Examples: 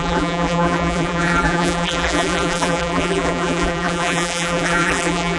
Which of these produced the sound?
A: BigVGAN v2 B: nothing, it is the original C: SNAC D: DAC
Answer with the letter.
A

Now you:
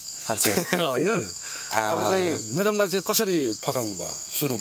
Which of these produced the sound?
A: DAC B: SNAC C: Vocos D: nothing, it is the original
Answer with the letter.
B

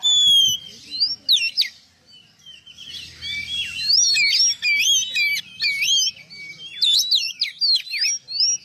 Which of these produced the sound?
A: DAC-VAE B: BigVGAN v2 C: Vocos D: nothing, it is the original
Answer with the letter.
D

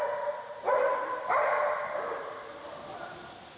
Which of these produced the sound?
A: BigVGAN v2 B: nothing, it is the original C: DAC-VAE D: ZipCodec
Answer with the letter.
B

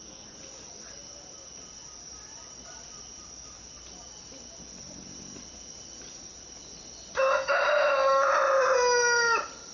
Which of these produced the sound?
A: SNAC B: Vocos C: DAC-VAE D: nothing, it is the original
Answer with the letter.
D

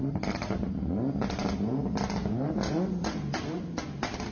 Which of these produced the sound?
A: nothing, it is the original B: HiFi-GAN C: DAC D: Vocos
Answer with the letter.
A